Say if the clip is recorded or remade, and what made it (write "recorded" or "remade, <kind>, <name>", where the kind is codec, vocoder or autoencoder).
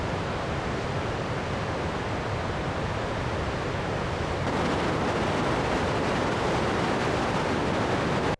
recorded